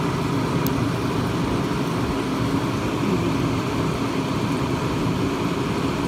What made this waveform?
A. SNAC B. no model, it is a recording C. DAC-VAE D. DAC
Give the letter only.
B